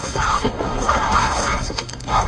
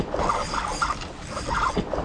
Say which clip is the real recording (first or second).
second